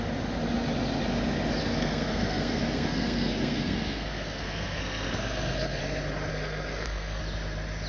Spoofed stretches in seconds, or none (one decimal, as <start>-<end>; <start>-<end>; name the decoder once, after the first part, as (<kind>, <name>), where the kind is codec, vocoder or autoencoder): 1.6-5.8 (codec, SNAC); 6.3-7.2